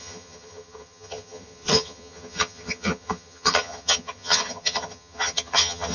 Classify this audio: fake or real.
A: fake